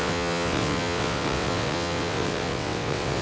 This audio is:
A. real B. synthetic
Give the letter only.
B